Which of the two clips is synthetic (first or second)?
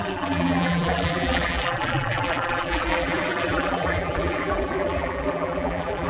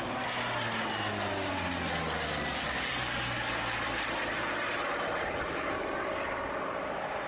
first